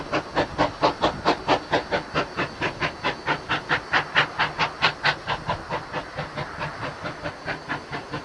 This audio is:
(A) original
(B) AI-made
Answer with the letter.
A